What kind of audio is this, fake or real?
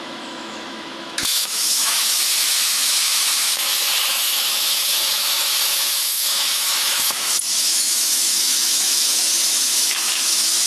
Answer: fake